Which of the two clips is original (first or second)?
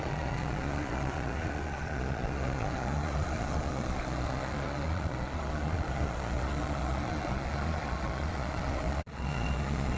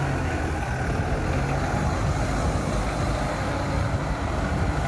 second